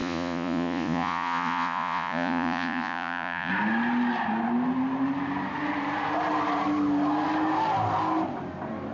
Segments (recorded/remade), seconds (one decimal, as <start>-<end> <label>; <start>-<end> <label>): 0.0-3.5 remade; 3.5-8.9 recorded